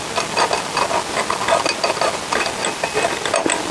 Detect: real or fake real